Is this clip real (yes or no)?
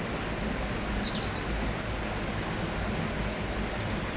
yes